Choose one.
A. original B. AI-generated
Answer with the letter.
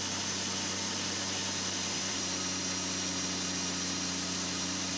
B